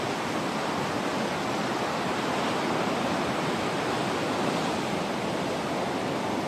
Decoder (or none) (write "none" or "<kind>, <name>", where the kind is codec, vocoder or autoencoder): none